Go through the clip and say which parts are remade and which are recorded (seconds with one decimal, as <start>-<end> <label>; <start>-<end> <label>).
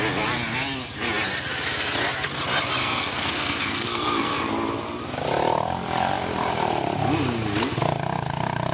0.0-2.8 recorded; 2.8-4.5 remade; 4.5-8.7 recorded